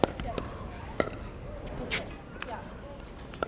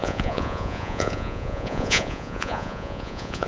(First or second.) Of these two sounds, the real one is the first